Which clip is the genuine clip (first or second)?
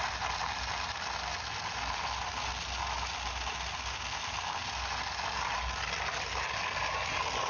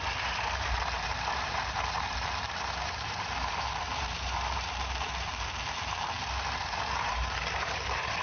first